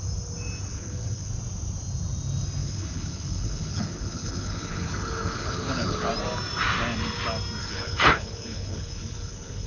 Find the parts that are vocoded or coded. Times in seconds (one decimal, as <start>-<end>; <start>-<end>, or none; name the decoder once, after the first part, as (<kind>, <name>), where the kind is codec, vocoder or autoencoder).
0.7-1.3 (codec, HILCodec); 2.6-6.1; 7.6-9.7